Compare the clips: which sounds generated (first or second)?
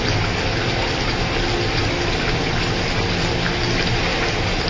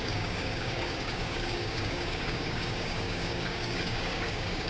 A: second